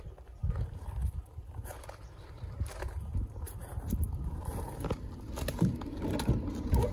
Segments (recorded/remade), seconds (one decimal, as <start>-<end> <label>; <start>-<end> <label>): 0.0-0.4 remade; 0.4-1.4 recorded; 1.4-6.9 remade